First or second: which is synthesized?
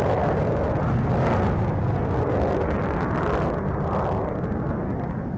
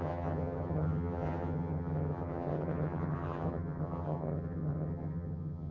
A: second